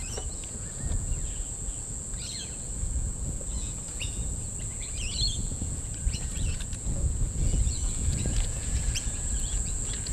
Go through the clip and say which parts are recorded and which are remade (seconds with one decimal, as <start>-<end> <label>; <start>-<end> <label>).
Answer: 0.0-10.1 remade